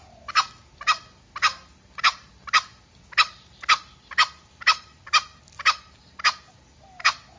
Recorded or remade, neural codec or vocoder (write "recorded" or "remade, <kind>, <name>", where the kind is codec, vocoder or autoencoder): recorded